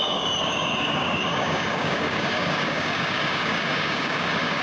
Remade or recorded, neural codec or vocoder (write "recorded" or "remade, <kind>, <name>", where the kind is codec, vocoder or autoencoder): remade, codec, DAC